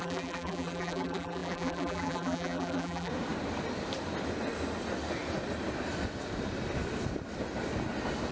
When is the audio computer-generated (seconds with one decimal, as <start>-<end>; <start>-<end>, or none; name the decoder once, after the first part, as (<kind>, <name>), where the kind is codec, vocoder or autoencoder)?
0.0-3.1 (vocoder, BigVGAN v2)